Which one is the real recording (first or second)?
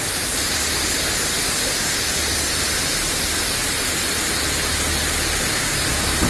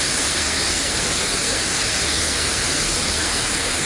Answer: first